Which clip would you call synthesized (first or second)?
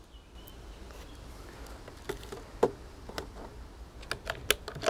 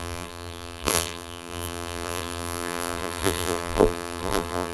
second